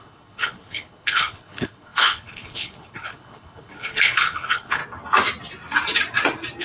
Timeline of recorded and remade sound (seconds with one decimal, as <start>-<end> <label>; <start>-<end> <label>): 0.0-4.8 remade; 4.8-6.6 recorded